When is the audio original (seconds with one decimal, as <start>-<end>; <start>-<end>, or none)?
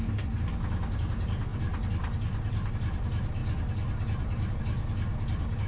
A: 0.0-1.5; 2.7-5.7